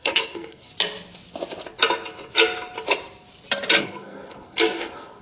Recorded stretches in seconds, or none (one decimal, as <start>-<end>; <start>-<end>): 0.7-3.8